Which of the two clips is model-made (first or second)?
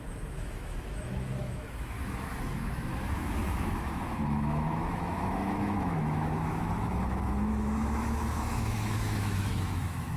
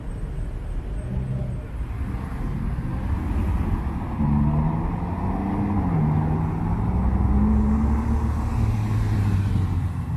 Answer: first